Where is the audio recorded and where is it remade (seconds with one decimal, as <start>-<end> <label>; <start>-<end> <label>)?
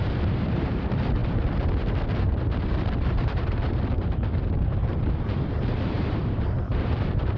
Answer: 0.0-7.4 remade